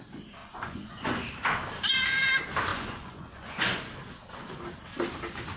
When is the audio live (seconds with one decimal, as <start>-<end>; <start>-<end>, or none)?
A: 0.0-0.4; 1.2-2.7; 3.8-5.6